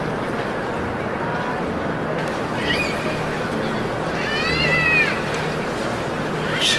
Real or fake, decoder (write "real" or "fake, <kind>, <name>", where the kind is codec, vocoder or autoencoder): real